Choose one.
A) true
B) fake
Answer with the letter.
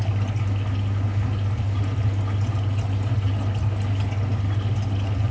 A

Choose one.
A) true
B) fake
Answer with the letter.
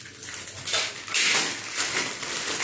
A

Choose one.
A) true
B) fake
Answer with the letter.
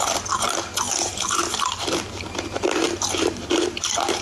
B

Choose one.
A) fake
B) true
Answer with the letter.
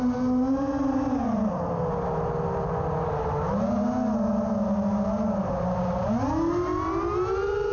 B